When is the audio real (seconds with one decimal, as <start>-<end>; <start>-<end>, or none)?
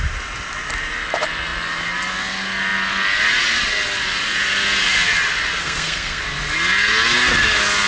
0.0-5.6; 6.2-7.9